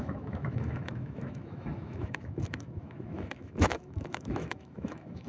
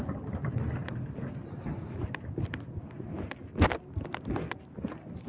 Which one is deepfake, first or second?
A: first